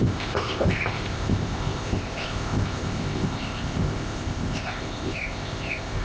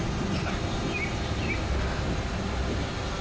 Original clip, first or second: second